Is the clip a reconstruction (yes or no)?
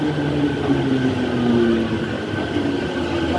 no